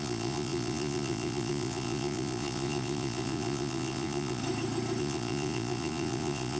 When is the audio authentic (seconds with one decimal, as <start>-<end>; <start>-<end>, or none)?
4.4-5.0